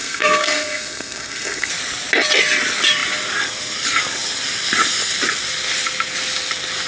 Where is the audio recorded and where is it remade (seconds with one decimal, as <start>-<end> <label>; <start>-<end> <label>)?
0.0-1.7 remade; 1.7-6.9 recorded